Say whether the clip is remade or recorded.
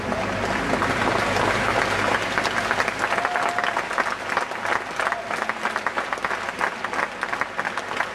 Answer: recorded